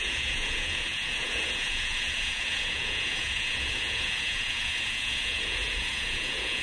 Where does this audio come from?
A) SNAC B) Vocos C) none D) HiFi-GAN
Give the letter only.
B